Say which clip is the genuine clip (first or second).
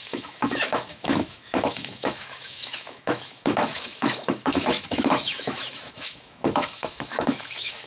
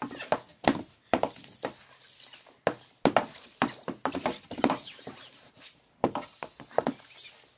second